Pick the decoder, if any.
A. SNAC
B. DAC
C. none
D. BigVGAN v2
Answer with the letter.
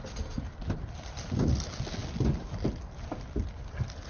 C